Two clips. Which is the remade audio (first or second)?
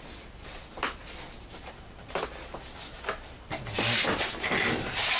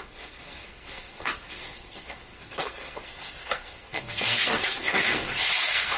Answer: second